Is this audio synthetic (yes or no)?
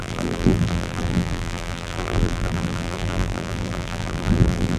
yes